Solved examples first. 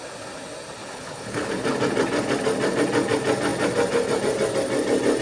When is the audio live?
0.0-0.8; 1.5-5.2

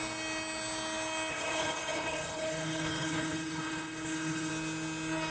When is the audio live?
0.0-1.3; 4.5-5.3

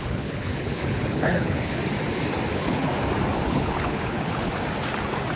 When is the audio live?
1.8-2.5; 2.9-3.5; 4.5-5.4

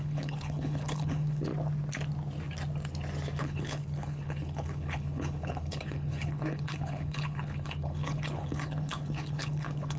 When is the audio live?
1.5-3.4

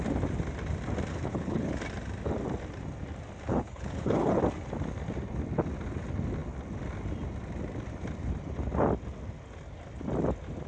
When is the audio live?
0.0-1.1; 1.8-3.5; 4.4-10.7